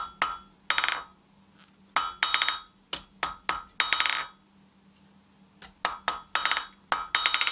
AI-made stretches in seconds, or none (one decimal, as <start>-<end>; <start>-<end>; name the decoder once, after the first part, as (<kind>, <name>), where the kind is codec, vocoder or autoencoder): none